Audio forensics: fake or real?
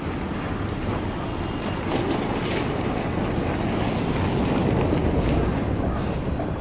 real